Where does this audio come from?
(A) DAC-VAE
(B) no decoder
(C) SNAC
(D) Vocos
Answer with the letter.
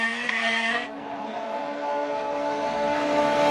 C